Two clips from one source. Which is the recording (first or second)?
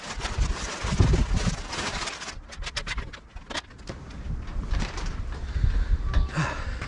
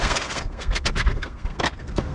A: first